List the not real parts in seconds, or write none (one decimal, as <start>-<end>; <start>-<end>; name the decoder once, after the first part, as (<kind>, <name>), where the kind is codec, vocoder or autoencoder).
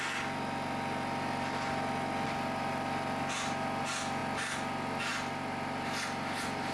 none